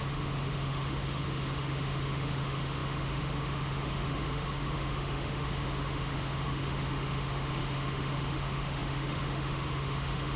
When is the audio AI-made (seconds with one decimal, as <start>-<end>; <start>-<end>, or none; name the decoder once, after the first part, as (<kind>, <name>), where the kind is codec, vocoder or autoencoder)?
0.0-10.4 (autoencoder, DAC-VAE)